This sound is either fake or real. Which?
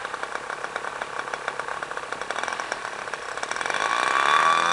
real